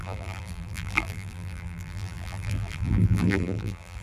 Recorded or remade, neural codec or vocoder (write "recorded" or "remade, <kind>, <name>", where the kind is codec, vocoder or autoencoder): remade, vocoder, BigVGAN v2